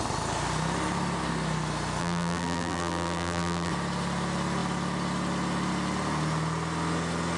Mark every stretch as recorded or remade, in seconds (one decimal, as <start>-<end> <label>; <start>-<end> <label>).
0.0-2.0 recorded; 2.0-3.7 remade; 3.7-7.4 recorded